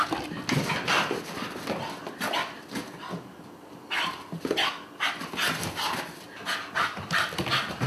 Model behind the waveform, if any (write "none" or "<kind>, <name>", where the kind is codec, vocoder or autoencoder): none